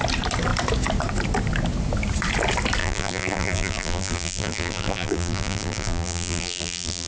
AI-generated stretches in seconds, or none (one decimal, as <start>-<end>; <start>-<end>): 2.8-7.1